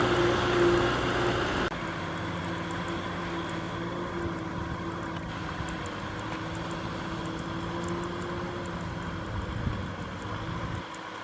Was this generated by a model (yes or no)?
no